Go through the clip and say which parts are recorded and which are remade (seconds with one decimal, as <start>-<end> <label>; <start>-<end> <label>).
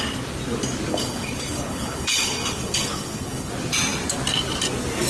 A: 0.0-0.9 recorded; 0.9-3.5 remade; 3.5-5.1 recorded